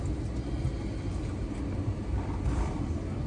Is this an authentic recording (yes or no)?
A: yes